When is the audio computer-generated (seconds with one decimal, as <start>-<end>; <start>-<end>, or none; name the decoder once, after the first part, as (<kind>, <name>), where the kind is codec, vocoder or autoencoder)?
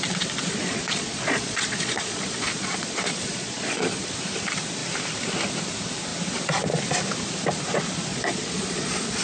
0.5-4.1 (vocoder, Vocos); 8.1-9.2